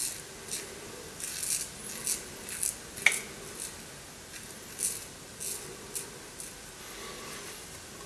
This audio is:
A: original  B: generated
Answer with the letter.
A